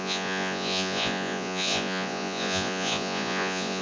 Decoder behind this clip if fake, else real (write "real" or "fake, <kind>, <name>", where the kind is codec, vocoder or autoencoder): fake, vocoder, Vocos